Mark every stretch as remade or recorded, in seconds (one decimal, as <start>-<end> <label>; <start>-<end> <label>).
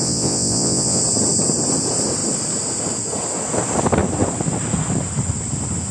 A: 0.0-1.0 remade; 1.0-5.9 recorded